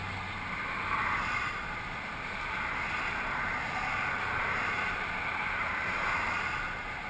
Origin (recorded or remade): recorded